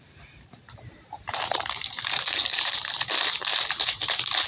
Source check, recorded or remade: remade